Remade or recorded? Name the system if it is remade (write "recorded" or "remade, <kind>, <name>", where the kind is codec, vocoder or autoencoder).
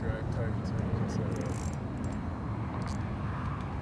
recorded